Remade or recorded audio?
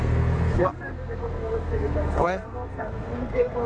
remade